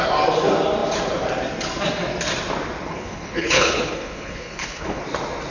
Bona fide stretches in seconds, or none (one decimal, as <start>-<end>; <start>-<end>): 0.0-2.9; 5.0-5.5